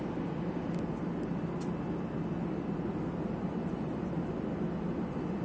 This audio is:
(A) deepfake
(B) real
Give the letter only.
B